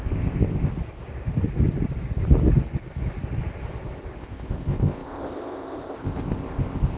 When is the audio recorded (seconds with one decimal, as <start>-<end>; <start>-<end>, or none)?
0.7-4.2